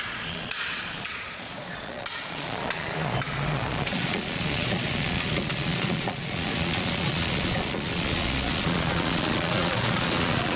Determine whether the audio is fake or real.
fake